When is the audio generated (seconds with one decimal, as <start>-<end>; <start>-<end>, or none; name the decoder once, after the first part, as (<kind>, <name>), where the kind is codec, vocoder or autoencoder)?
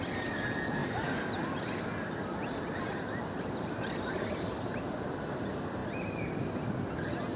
none